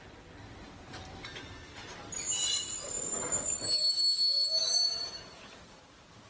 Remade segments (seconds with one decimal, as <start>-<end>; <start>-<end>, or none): 4.6-5.8